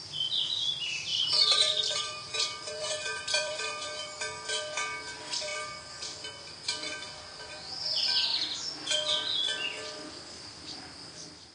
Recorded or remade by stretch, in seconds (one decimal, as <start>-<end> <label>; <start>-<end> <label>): 0.0-1.1 recorded; 1.1-4.2 remade; 4.2-11.5 recorded